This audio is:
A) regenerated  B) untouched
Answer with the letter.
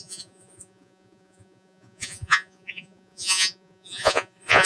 A